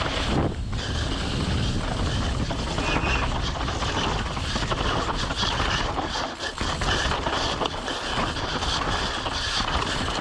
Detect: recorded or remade recorded